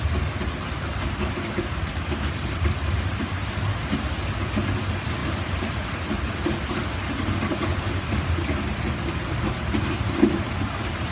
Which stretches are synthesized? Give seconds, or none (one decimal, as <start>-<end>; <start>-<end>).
0.9-3.1; 5.2-8.3

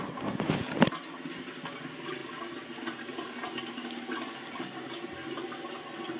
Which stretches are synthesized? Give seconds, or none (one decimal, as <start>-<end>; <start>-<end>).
none

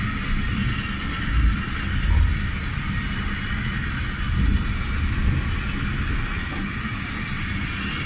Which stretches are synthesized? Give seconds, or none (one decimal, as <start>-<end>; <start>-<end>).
none

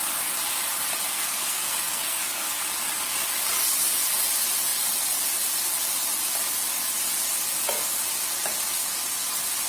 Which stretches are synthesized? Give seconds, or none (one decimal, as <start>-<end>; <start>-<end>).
1.1-2.6

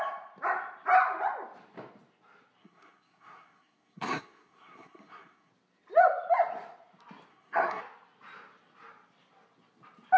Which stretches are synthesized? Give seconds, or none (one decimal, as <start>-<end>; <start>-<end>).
2.6-5.5; 7.3-7.8

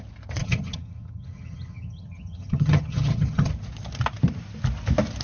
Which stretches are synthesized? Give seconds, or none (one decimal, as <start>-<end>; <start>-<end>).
0.4-3.5

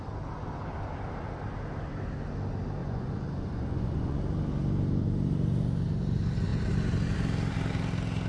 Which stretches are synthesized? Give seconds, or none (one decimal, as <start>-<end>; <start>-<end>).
2.8-4.2

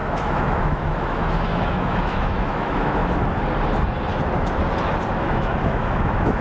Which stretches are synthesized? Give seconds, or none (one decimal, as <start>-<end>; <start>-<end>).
0.0-3.0; 5.1-6.4